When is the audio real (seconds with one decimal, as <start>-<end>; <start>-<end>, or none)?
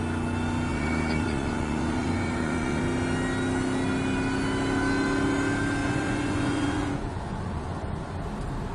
0.0-0.7; 2.8-5.8; 8.2-8.7